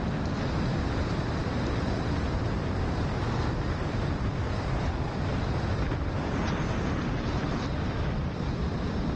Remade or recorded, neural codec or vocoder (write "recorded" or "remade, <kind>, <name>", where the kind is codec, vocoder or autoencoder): remade, vocoder, BigVGAN v2